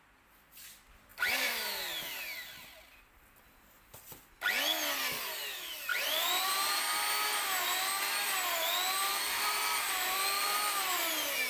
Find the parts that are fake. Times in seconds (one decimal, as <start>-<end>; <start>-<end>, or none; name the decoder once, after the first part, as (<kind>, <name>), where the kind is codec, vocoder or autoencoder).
1.1-1.9 (vocoder, BigVGAN v2); 5.9-6.8; 9.0-11.0